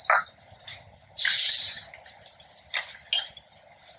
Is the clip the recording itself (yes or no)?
yes